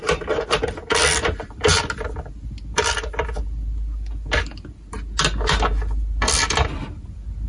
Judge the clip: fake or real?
real